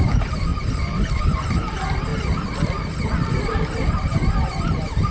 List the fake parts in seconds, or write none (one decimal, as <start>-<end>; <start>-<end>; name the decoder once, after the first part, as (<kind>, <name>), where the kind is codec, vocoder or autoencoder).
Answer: 0.0-0.5 (vocoder, BigVGAN v2); 1.1-2.1; 4.5-5.1